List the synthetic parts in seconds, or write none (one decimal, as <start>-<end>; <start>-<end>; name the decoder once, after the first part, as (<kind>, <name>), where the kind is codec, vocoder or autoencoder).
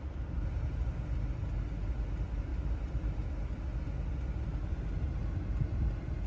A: none